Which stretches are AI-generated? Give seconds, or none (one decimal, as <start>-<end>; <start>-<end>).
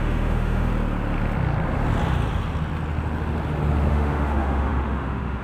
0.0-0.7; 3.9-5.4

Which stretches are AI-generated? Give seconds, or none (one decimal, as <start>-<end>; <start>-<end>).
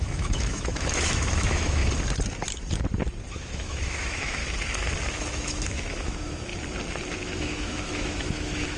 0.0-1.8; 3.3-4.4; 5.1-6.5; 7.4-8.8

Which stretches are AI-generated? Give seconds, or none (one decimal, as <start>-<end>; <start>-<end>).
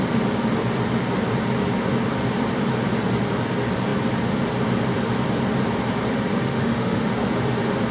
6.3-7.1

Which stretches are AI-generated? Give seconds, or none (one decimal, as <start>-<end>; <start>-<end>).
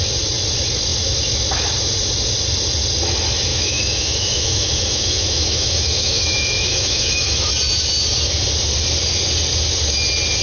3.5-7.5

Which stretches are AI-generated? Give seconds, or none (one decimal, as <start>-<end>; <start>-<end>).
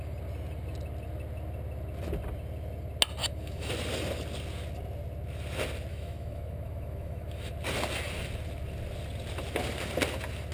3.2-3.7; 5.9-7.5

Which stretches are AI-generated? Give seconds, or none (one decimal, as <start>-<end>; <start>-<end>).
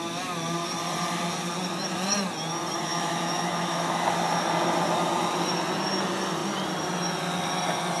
2.9-3.9